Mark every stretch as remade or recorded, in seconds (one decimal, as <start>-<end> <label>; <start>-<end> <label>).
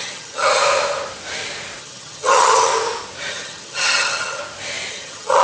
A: 0.0-0.6 remade; 0.6-1.8 recorded; 1.8-2.7 remade; 2.7-3.3 recorded; 3.3-4.4 remade; 4.4-4.9 recorded; 4.9-5.4 remade